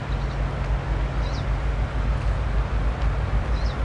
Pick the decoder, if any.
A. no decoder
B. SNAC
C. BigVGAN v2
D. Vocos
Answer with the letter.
A